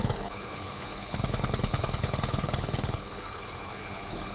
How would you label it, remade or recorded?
remade